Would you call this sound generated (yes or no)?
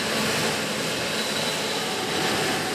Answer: no